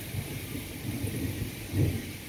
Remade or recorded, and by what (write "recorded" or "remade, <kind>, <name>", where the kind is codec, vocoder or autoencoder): recorded